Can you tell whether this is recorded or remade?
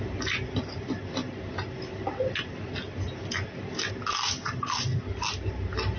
recorded